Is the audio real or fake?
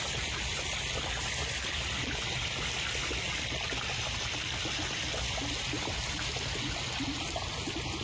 real